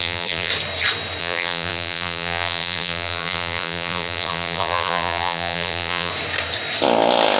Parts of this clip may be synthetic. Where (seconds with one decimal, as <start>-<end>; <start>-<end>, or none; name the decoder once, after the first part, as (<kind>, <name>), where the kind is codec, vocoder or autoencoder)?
0.0-0.5 (vocoder, BigVGAN v2); 1.2-6.1

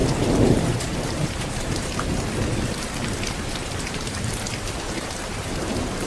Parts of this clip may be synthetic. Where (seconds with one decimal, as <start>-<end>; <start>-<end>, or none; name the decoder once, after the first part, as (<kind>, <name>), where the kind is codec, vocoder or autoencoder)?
0.0-2.1 (vocoder, BigVGAN v2); 2.7-6.1

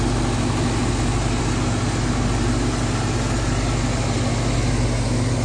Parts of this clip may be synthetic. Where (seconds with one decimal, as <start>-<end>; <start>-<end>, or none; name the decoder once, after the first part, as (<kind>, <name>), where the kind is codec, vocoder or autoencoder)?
none

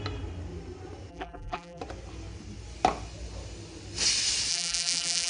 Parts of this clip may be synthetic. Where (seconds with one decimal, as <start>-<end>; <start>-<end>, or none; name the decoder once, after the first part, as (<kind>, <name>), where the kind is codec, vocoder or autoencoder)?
1.1-1.8 (vocoder, BigVGAN v2); 4.5-5.3

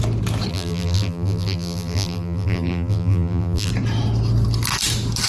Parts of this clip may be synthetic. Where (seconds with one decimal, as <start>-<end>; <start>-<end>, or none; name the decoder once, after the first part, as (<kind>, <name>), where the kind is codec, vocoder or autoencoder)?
0.5-3.7 (vocoder, BigVGAN v2)

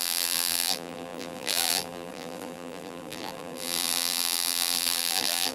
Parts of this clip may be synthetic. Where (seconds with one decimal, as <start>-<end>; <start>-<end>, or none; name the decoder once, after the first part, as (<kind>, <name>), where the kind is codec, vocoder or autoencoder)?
0.0-5.5 (vocoder, BigVGAN v2)